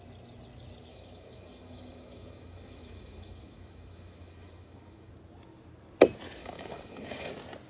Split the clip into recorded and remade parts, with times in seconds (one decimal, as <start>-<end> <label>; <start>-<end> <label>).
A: 0.0-0.9 recorded; 0.9-5.1 remade; 5.1-6.4 recorded; 6.4-7.3 remade; 7.3-7.7 recorded